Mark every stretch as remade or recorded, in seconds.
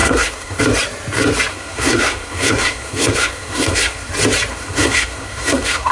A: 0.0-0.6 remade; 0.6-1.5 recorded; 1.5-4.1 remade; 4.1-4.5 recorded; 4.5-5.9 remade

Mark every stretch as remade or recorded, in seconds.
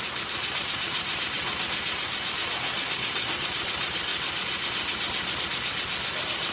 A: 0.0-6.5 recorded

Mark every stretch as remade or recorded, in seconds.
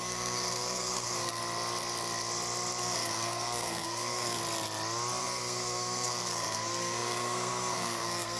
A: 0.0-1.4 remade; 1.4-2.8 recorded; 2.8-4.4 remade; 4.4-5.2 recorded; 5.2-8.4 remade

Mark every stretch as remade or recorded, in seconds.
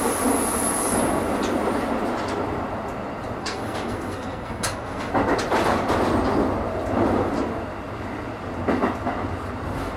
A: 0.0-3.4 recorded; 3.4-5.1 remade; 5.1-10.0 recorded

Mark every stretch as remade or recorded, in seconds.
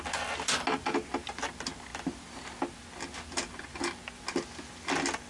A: 0.0-5.3 recorded